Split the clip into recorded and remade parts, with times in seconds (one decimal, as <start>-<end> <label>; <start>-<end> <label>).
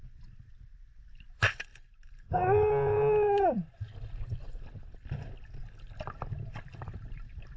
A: 0.0-7.6 recorded